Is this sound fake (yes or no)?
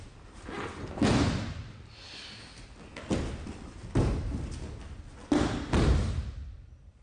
no